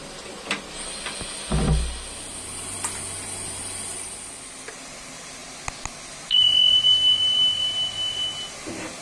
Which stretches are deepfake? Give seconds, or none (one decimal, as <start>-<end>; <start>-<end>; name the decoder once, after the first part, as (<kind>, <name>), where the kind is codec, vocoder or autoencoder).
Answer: none